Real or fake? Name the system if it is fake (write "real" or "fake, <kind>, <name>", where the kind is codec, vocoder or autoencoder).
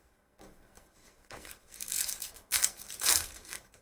fake, codec, SNAC